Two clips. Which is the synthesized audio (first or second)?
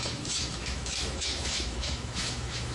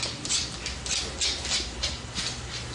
first